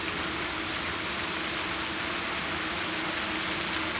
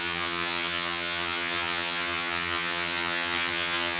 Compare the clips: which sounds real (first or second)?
first